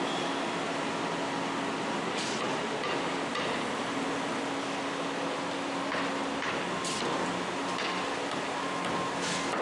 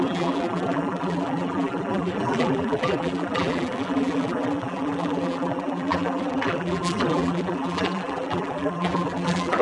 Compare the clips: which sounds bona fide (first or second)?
first